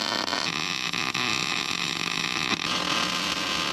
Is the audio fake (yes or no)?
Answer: no